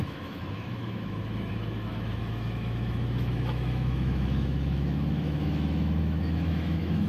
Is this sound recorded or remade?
remade